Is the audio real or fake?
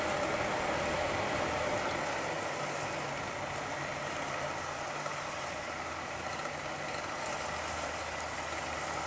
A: real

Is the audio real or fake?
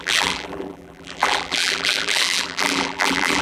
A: fake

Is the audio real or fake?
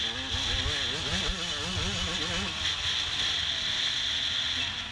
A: real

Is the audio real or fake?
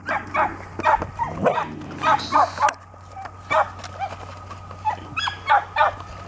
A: real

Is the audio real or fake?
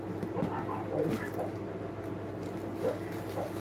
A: real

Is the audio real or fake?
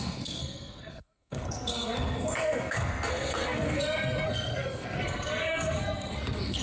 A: fake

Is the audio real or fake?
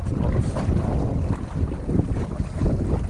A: real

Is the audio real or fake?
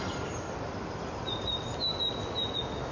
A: real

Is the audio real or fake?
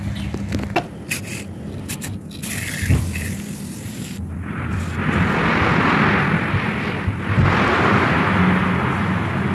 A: real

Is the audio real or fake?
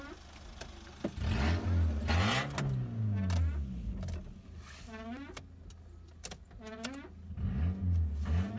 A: real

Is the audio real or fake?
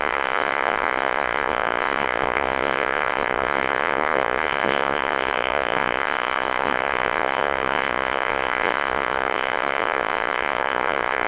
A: fake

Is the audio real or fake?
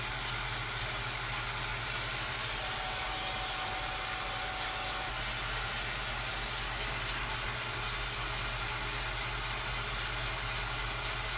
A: real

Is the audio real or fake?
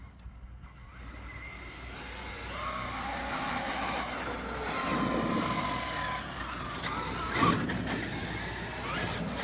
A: real